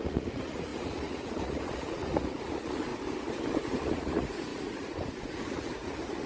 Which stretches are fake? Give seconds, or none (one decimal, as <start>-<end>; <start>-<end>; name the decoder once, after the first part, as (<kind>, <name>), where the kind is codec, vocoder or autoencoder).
0.0-2.9 (vocoder, Vocos); 3.6-6.3